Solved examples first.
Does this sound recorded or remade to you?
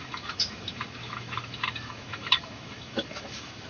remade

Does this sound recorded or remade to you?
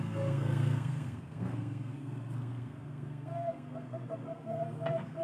remade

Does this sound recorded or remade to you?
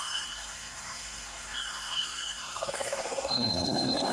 remade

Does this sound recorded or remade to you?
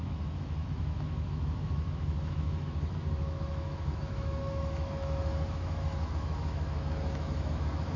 remade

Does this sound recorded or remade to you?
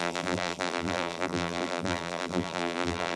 remade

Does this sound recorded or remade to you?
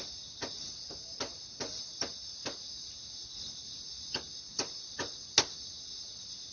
recorded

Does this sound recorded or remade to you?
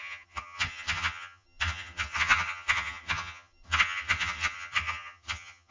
remade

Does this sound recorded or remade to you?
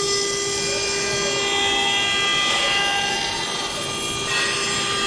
recorded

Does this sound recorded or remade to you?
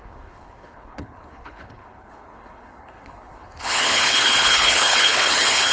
remade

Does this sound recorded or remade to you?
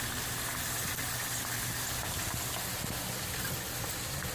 remade